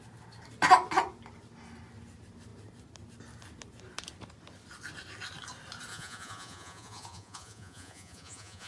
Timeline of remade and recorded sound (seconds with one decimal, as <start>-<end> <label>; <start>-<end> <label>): 0.0-5.9 recorded; 5.9-8.7 remade

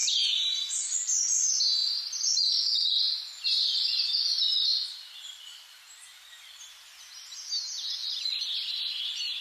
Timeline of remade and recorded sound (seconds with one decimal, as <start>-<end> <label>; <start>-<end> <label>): 0.0-1.8 recorded; 1.8-2.9 remade; 2.9-4.7 recorded; 4.7-6.6 remade; 6.6-8.0 recorded; 8.0-9.4 remade

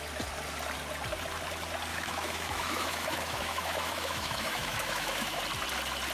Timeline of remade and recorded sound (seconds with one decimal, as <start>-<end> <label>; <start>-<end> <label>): 0.0-1.9 recorded; 1.9-5.4 remade; 5.4-6.1 recorded

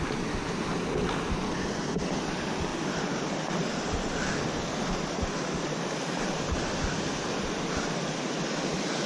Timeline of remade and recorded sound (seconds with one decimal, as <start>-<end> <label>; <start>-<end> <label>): 0.0-9.1 recorded

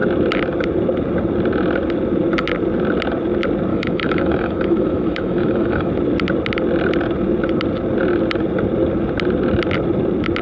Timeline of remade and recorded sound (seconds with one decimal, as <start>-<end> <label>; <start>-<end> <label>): 0.0-3.7 recorded; 3.7-5.9 remade; 5.9-10.4 recorded

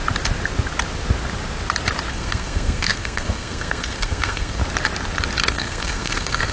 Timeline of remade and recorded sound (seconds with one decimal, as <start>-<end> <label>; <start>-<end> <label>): 0.0-2.1 recorded; 2.1-4.6 remade; 4.6-5.5 recorded; 5.5-6.5 remade

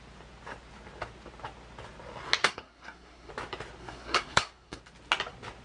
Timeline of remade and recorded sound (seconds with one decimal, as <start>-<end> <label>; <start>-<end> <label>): 0.0-2.4 recorded; 2.4-3.3 remade; 3.3-3.8 recorded; 3.8-4.8 remade; 4.8-5.6 recorded

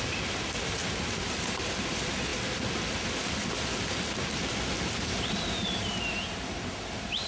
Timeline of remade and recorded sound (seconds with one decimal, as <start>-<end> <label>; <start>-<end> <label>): 0.0-7.3 recorded